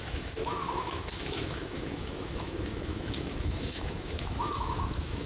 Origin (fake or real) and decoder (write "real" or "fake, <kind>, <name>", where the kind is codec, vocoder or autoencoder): fake, autoencoder, DAC-VAE